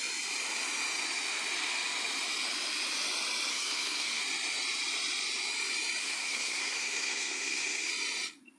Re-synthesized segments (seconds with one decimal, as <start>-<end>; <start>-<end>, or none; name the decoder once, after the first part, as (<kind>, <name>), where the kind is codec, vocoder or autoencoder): 3.5-4.2 (codec, SNAC); 6.0-7.9